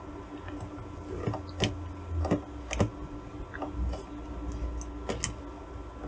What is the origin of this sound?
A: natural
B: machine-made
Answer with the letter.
A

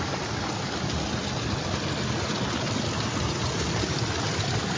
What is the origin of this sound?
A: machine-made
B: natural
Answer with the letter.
B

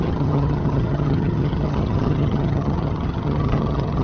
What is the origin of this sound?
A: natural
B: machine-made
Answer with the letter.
B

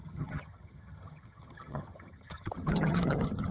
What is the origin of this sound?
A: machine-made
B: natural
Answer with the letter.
A